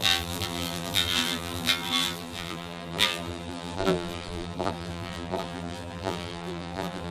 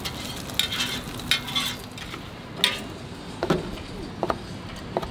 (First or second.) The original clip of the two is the second